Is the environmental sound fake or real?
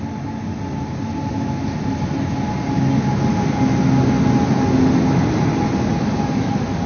real